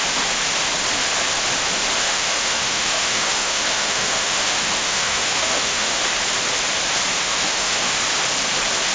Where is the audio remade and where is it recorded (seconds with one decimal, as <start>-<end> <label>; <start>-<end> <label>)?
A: 0.0-2.0 recorded; 2.0-6.0 remade; 6.0-7.1 recorded; 7.1-8.0 remade; 8.0-8.9 recorded